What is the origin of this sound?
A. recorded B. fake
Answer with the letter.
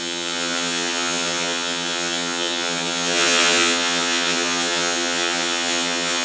B